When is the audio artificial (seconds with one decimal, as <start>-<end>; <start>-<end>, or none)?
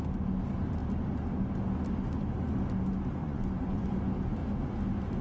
3.2-3.9